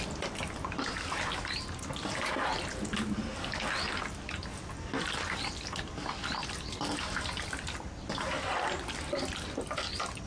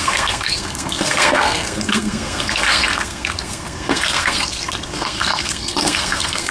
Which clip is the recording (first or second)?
first